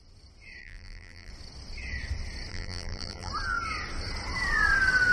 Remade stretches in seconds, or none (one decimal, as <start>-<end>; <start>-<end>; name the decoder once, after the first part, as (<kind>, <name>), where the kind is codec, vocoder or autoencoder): 0.6-1.3 (vocoder, BigVGAN v2); 2.5-3.3

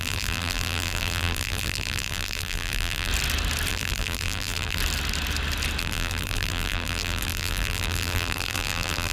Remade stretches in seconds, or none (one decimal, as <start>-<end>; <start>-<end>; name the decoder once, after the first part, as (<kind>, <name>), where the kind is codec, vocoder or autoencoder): 0.0-3.1 (vocoder, BigVGAN v2); 3.7-4.8; 5.8-9.1

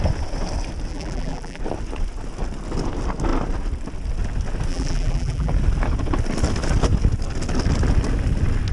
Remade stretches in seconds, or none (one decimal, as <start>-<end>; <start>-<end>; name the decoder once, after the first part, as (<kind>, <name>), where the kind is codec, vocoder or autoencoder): 0.9-1.6 (vocoder, BigVGAN v2); 4.7-5.5

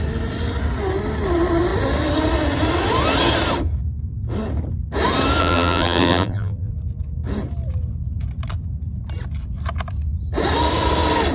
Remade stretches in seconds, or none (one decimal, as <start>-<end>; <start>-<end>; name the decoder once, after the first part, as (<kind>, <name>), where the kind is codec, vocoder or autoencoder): 5.4-6.7 (vocoder, BigVGAN v2)